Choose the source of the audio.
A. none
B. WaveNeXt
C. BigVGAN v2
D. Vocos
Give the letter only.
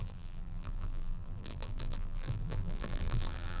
C